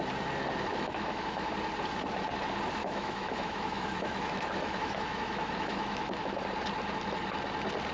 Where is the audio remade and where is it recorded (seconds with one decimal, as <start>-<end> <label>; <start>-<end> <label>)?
0.0-0.7 recorded; 0.7-1.5 remade; 1.5-2.8 recorded; 2.8-6.3 remade; 6.3-7.9 recorded